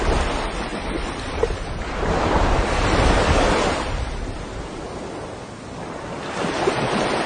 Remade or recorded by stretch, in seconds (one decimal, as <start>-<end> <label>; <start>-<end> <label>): 0.0-7.3 recorded